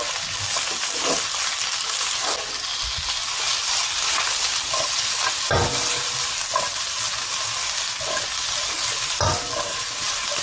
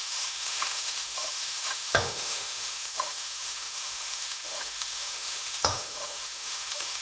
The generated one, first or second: second